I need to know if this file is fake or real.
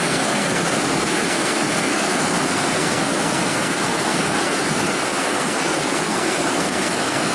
fake